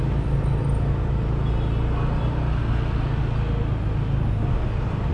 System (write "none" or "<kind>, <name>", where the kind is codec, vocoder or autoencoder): none